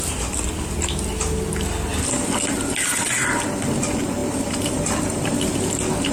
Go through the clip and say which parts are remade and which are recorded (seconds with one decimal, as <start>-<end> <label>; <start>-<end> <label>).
0.0-4.2 recorded; 4.2-5.5 remade; 5.5-6.1 recorded